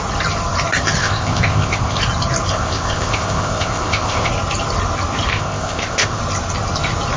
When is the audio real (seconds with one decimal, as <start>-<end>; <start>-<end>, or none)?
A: 0.0-1.0; 2.0-2.5; 4.3-5.3; 6.2-7.2